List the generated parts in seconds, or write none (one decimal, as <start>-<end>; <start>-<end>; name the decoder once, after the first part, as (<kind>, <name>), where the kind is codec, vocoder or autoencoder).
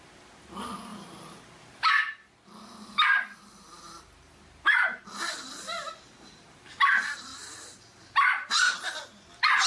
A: none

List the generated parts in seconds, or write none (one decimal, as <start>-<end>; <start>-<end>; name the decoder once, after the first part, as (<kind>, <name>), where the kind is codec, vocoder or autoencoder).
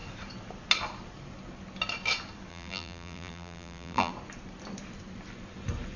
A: 2.5-4.1 (vocoder, BigVGAN v2)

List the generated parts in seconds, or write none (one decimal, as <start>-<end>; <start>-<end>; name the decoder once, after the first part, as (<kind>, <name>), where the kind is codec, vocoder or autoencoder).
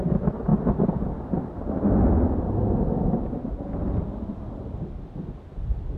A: none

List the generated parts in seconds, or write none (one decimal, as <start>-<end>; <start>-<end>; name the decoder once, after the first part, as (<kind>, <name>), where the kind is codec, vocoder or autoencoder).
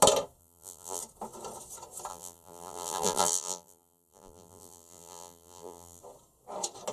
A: 0.4-1.0 (vocoder, BigVGAN v2); 2.1-6.0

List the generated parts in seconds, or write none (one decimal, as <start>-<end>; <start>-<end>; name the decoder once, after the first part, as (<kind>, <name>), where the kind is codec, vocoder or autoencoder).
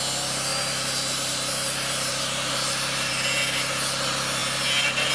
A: 0.5-3.1 (vocoder, BigVGAN v2)